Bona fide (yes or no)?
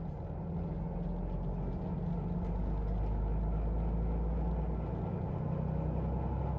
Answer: yes